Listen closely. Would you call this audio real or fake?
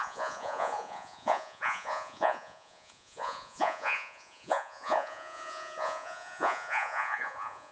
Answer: fake